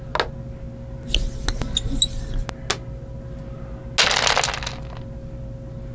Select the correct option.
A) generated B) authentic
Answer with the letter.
B